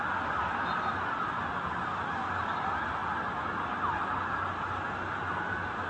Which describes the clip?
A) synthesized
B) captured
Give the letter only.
B